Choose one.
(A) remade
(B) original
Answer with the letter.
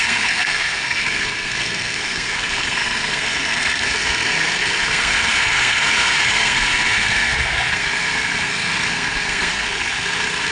A